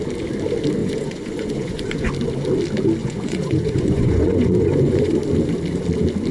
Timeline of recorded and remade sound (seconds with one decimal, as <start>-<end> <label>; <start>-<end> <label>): 0.0-0.8 recorded; 0.8-2.1 remade; 2.1-3.0 recorded; 3.0-5.1 remade; 5.1-6.3 recorded